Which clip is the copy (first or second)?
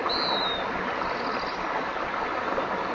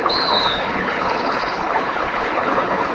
second